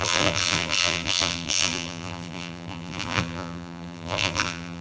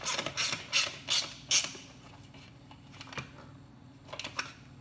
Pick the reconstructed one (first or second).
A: first